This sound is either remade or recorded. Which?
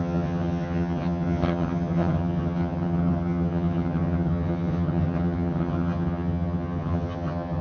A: remade